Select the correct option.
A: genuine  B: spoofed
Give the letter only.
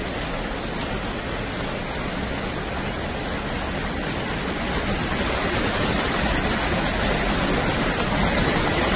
A